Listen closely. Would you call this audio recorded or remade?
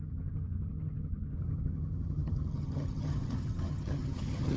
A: remade